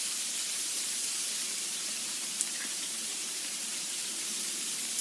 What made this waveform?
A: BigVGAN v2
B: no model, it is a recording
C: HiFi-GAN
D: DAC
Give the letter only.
A